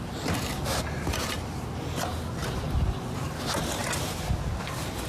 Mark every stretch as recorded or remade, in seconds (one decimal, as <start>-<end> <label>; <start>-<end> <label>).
0.0-5.1 recorded